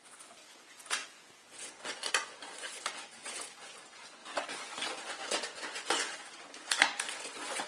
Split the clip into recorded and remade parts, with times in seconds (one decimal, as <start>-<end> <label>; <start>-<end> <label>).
0.0-7.7 remade